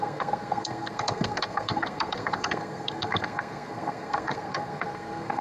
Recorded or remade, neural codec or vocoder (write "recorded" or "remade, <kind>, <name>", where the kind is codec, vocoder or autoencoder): remade, codec, SNAC